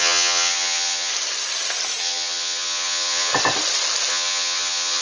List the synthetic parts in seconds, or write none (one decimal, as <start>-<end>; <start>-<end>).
0.0-1.1; 2.0-3.3; 4.1-5.0